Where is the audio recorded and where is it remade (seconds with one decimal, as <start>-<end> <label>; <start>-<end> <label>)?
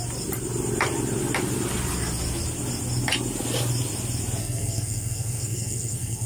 0.0-4.4 recorded; 4.4-6.3 remade